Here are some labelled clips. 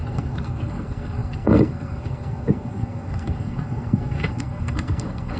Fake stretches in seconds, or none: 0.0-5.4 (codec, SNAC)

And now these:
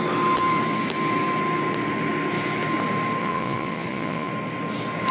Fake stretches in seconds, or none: 3.2-4.3 (vocoder, Vocos)